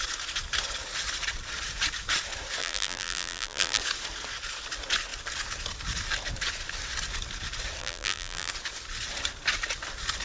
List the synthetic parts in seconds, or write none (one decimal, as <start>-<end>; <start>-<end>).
2.6-3.8; 7.8-8.5